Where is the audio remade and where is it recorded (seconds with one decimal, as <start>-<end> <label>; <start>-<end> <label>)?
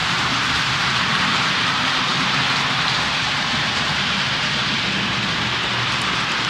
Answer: 0.0-6.5 remade